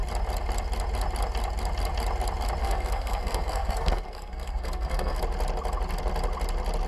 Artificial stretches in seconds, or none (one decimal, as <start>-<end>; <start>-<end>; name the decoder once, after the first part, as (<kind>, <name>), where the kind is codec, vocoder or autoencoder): 2.6-5.2 (codec, SNAC)